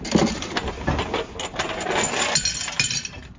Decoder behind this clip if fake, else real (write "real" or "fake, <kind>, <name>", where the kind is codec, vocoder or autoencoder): real